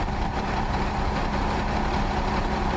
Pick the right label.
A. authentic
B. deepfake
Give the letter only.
B